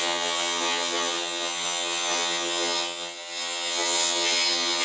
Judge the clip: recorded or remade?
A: remade